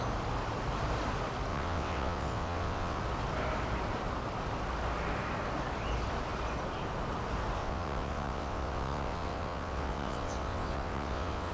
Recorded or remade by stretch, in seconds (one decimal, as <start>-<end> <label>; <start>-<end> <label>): 0.0-1.5 recorded; 1.5-3.0 remade; 3.0-7.6 recorded; 7.6-11.5 remade